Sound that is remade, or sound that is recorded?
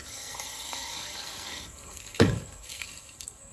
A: remade